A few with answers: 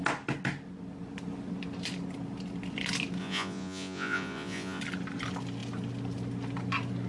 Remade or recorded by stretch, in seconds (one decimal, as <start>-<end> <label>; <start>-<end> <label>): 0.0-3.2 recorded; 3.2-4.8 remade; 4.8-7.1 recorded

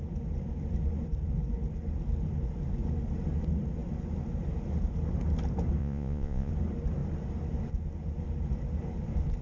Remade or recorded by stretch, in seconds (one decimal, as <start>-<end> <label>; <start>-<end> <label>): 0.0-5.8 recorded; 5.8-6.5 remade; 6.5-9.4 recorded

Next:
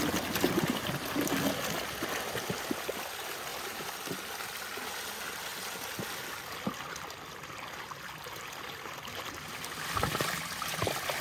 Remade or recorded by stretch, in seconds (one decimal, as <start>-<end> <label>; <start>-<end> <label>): 0.0-11.2 recorded

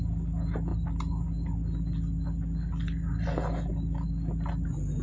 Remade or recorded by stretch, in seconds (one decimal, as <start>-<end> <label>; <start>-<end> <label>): 0.0-5.0 recorded

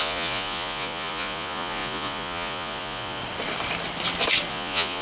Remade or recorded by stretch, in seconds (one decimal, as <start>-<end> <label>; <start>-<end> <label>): 0.0-3.2 remade; 3.2-4.5 recorded; 4.5-5.0 remade

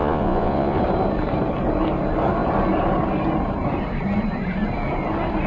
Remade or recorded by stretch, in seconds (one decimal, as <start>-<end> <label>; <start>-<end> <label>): 0.0-0.8 remade; 0.8-5.5 recorded

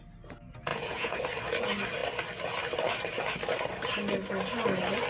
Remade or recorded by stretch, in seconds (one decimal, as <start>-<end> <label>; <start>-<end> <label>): 0.0-0.7 recorded; 0.7-1.2 remade; 1.2-5.1 recorded

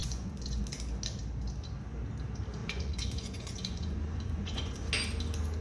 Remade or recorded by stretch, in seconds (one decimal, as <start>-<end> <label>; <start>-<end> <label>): 0.0-0.6 remade; 0.6-2.6 recorded; 2.6-4.9 remade; 4.9-5.6 recorded